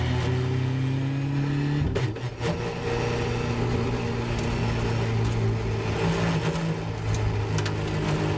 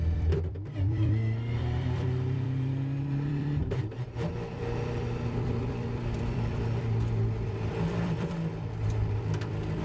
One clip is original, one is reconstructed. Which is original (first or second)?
first